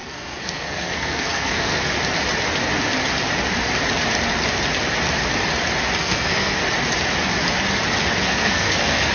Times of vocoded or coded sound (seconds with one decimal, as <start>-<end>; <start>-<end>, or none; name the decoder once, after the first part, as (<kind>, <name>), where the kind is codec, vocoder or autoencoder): 0.0-1.9 (codec, SNAC); 6.0-6.6; 8.3-9.1